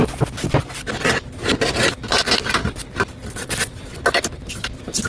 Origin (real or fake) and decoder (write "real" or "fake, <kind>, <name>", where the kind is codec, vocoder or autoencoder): real